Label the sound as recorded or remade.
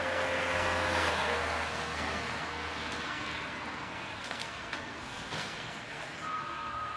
remade